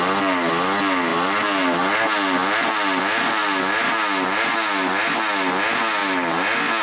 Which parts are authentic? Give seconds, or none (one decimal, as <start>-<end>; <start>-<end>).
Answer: 0.0-6.8